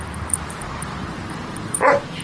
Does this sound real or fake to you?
fake